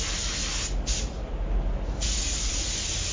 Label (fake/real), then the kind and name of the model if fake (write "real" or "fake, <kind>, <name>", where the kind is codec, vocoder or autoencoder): real